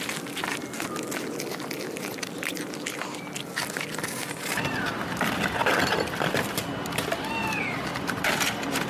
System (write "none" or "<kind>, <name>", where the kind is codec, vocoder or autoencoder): none